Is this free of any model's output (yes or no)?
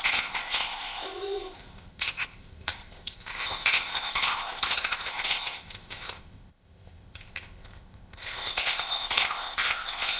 no